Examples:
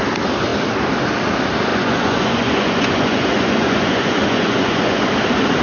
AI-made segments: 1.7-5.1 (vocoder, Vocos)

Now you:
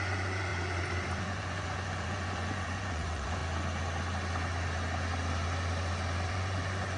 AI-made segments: 0.0-0.5 (vocoder, Vocos); 1.2-3.4; 6.3-7.0

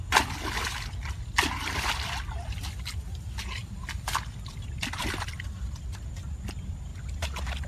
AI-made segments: none

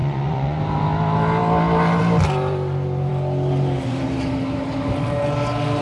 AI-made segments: 0.0-0.6 (vocoder, Vocos)

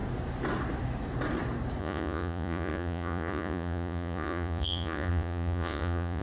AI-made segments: 1.8-6.2 (vocoder, Vocos)